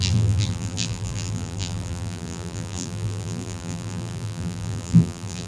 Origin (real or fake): fake